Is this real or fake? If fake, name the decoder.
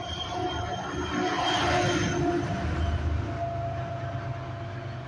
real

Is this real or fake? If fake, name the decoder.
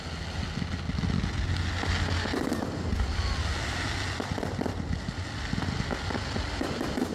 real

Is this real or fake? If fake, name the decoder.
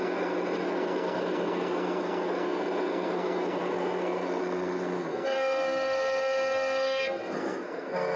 fake, codec, SNAC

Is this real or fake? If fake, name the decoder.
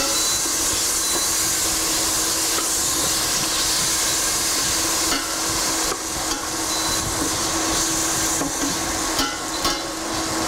real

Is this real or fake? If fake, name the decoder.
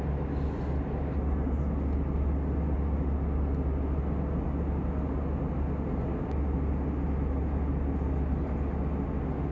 real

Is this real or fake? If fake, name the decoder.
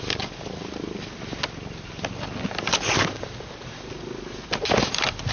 real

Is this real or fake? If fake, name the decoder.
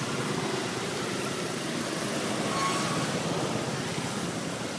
real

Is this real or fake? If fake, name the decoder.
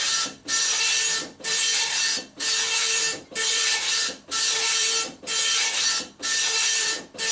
fake, vocoder, BigVGAN v2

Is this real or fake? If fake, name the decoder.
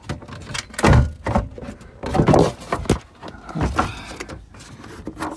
real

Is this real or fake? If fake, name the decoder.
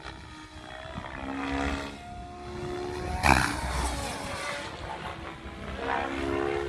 real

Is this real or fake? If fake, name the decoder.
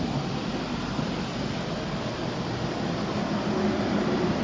real